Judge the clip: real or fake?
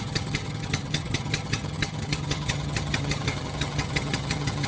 fake